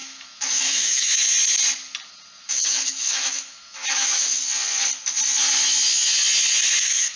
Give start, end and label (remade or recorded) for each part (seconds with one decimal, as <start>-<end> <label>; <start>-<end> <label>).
0.0-1.1 remade; 1.1-2.4 recorded; 2.4-4.4 remade; 4.4-6.8 recorded; 6.8-7.2 remade